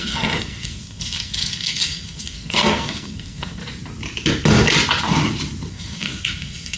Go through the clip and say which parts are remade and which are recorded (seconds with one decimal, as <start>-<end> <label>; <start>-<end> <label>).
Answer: 0.0-3.6 remade; 3.6-5.7 recorded; 5.7-6.8 remade